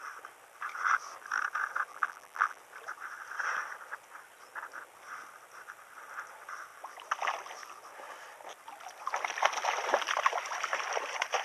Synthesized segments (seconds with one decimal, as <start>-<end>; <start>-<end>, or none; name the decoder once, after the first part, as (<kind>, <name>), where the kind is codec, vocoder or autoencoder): 1.9-2.6 (vocoder, BigVGAN v2)